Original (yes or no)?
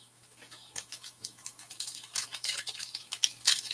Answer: no